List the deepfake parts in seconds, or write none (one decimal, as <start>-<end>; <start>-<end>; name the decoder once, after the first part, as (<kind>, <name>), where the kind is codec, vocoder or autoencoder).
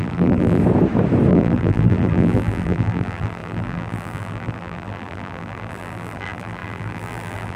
0.0-0.6 (vocoder, BigVGAN v2); 1.3-7.6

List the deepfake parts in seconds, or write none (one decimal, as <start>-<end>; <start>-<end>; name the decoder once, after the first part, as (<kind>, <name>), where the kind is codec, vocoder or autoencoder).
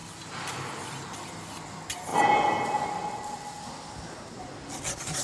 none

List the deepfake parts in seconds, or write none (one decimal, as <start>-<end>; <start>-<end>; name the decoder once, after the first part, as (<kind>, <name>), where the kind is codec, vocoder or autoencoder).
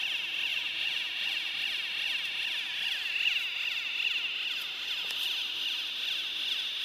0.5-1.5 (vocoder, Vocos)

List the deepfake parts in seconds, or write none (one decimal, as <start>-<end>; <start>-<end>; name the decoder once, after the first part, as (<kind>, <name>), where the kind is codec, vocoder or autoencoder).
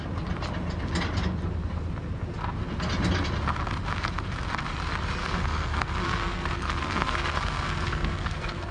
5.2-8.7 (codec, SNAC)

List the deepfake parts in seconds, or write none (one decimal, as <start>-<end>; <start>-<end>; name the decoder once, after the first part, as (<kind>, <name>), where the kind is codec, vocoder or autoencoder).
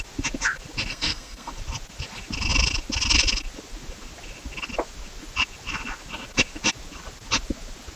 0.9-1.5 (codec, SNAC)